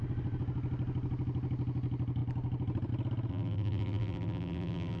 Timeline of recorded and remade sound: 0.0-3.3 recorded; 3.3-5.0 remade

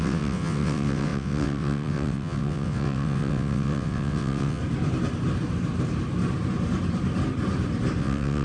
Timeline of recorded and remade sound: 0.0-4.6 remade; 4.6-8.0 recorded; 8.0-8.4 remade

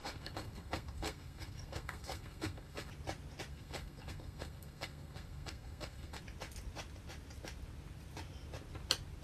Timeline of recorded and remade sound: 0.0-2.9 remade; 2.9-3.5 recorded; 3.5-6.2 remade; 6.2-9.2 recorded

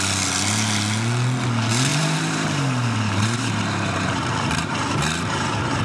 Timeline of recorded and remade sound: 0.0-1.9 recorded; 1.9-5.8 remade

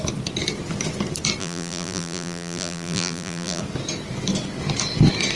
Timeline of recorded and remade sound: 0.0-1.4 recorded; 1.4-3.6 remade; 3.6-5.4 recorded

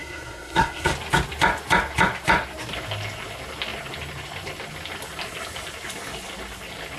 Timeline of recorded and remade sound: 0.0-0.9 remade; 0.9-7.0 recorded

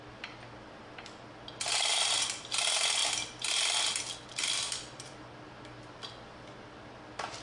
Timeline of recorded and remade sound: 0.0-7.4 recorded

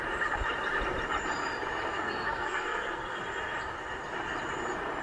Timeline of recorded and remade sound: 0.0-1.9 recorded; 1.9-3.2 remade; 3.2-5.0 recorded